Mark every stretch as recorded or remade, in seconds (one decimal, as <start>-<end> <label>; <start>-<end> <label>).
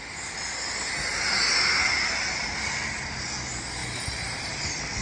0.0-5.0 recorded